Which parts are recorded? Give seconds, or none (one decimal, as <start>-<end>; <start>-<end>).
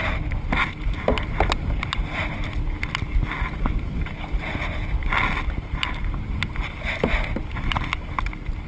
0.0-8.7